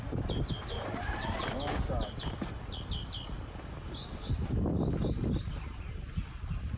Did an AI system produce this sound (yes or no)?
no